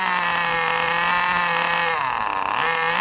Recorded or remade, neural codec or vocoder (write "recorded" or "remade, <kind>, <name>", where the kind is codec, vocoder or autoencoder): recorded